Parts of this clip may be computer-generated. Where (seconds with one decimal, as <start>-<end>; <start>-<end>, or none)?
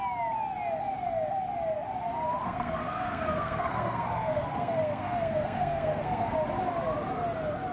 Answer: 2.4-6.3